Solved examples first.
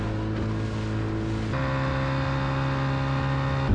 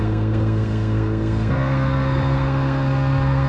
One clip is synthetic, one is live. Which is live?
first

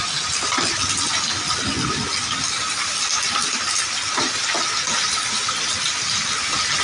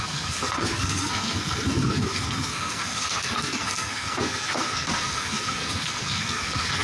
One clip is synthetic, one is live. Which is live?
first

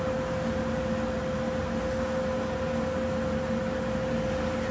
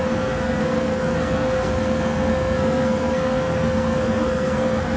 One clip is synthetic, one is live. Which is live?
first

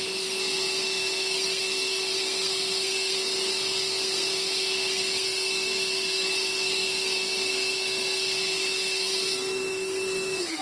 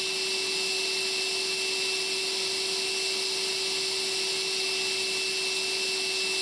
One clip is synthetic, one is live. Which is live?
second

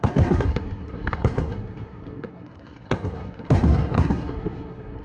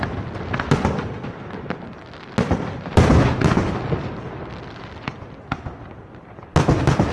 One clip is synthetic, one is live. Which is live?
second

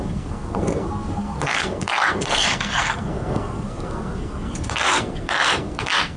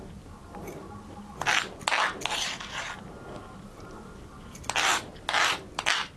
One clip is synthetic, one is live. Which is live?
second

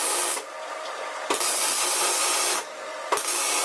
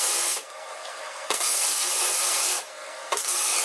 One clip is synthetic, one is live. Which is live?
first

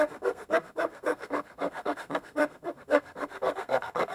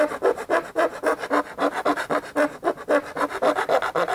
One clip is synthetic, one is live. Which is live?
second